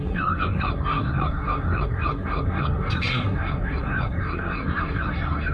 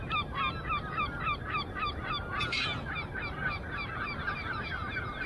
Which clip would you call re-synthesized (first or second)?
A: first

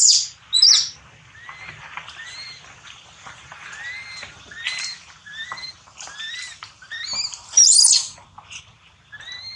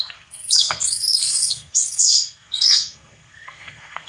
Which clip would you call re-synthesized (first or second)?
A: second